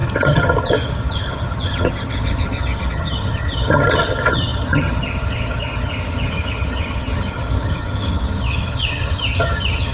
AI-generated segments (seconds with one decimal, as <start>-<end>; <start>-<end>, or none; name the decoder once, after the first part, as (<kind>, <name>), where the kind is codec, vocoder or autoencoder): 0.0-9.9 (vocoder, HiFi-GAN)